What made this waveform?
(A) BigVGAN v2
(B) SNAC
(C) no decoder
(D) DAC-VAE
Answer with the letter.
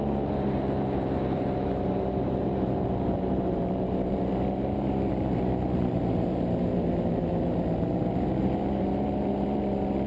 A